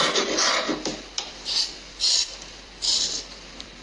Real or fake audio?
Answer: fake